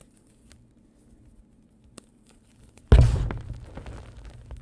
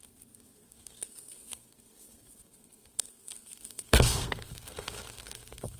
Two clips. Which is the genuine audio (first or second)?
first